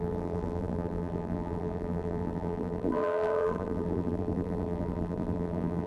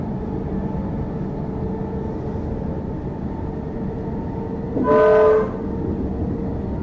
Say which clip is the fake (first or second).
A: first